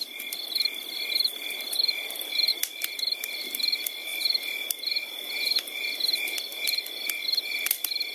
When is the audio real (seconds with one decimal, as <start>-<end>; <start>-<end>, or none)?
0.0-8.1